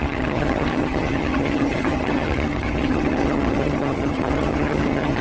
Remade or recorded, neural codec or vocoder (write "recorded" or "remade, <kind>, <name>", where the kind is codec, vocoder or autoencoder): remade, vocoder, HiFi-GAN